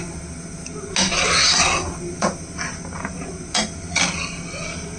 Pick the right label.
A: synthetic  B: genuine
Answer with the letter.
B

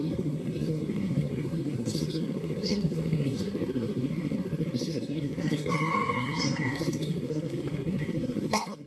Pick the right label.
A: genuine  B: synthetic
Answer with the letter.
B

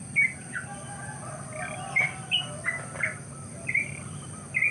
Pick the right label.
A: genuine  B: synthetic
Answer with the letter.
A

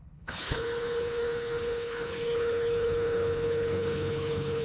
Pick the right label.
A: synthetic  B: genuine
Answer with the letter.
A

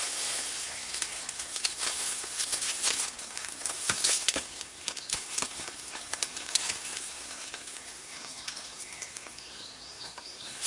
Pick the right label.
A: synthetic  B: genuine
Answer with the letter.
A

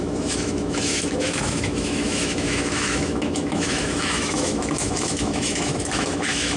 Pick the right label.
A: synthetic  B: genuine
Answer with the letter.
A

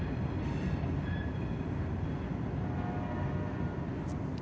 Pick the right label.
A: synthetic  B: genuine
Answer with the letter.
B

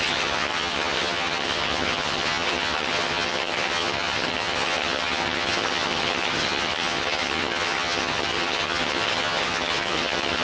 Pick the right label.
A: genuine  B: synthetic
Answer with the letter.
B